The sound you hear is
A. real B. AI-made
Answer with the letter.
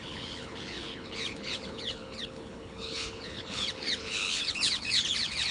B